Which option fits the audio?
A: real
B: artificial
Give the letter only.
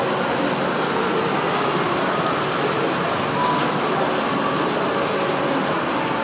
A